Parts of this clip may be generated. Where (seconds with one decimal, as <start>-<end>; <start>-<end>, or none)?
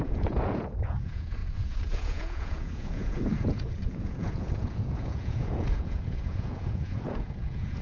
0.0-7.8